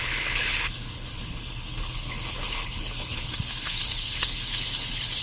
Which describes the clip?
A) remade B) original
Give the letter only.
A